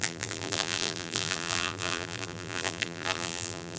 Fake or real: fake